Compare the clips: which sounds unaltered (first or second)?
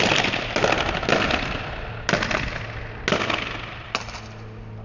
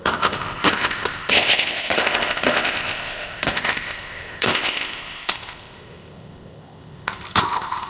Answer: first